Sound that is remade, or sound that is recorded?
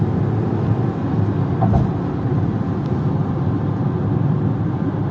recorded